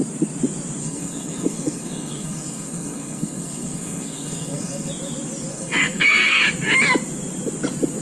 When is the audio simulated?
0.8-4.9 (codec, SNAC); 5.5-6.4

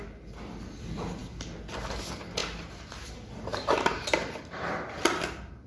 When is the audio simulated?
none

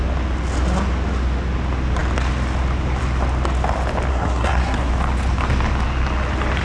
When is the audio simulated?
4.1-4.9 (codec, SNAC)